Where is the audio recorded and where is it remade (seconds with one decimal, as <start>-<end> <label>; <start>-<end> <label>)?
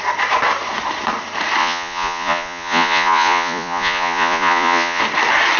0.0-1.6 recorded; 1.6-5.0 remade; 5.0-5.6 recorded